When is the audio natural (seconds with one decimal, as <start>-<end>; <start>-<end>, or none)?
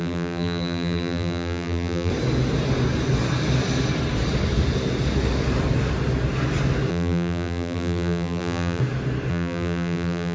2.1-6.9; 8.8-9.3